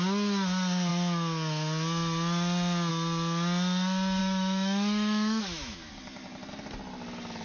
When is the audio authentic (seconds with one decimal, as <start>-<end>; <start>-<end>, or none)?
0.0-4.2; 5.9-7.4